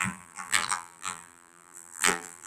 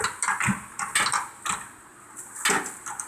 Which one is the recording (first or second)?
second